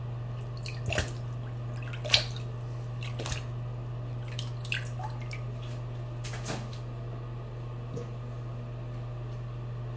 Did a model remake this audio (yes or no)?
no